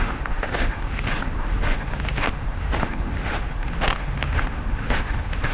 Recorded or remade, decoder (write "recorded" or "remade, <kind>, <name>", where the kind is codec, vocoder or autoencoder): remade, autoencoder, DAC-VAE